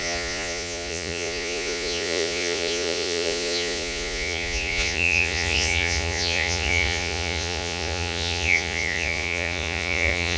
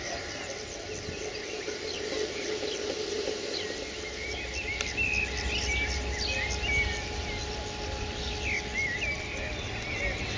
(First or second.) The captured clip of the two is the second